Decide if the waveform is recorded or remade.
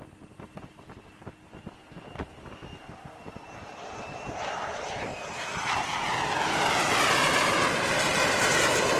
recorded